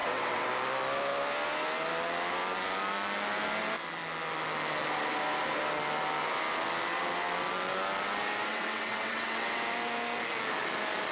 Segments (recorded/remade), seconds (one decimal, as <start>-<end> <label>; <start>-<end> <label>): 0.0-0.5 remade; 0.5-8.5 recorded; 8.5-9.6 remade; 9.6-11.1 recorded